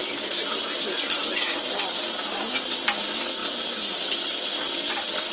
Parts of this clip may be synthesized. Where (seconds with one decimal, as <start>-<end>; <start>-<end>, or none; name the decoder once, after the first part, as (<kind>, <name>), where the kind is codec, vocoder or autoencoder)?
0.0-2.0 (vocoder, BigVGAN v2); 3.4-5.3